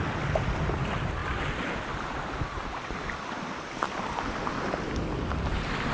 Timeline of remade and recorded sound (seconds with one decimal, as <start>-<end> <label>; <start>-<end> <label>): 0.0-5.9 recorded